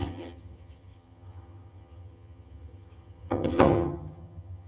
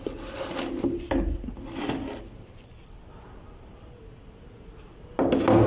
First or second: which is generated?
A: first